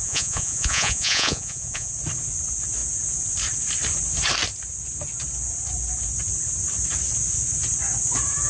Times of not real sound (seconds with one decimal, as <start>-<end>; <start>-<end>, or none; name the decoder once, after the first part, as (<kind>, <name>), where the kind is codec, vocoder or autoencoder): 0.0-1.9 (vocoder, Vocos)

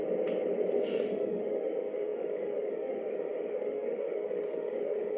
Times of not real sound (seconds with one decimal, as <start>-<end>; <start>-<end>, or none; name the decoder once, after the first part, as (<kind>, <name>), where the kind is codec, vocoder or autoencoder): 0.8-5.2 (autoencoder, DAC-VAE)

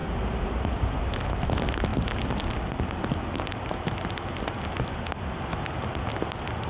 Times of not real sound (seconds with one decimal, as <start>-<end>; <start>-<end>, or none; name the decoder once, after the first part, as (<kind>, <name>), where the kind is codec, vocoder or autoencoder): none

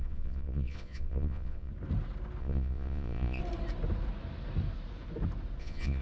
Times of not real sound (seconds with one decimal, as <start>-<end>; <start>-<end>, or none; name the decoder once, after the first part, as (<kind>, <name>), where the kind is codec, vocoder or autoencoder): 0.0-1.7 (vocoder, Vocos); 2.4-3.4; 5.6-6.0

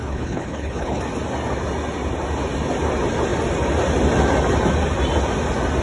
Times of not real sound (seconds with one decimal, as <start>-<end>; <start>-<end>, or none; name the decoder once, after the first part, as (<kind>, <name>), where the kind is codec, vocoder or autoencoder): 0.0-1.0 (codec, HILCodec)

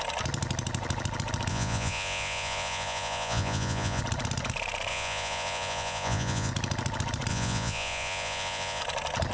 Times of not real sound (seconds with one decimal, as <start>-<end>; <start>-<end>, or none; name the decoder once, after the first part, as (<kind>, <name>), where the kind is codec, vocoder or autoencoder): 1.5-4.0 (vocoder, Vocos); 4.9-6.5; 7.3-8.8

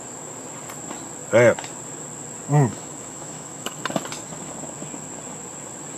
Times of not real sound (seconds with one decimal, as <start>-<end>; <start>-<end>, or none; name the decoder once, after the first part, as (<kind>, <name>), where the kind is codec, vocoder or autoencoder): 2.7-3.8 (autoencoder, DAC-VAE)